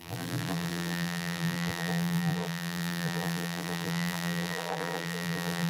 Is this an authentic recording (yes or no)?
no